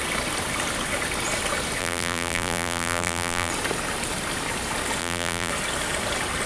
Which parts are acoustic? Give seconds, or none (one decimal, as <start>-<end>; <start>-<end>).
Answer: 0.0-1.8; 3.5-5.0; 5.5-6.5